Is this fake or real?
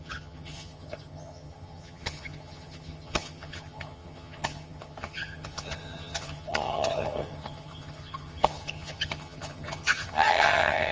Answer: fake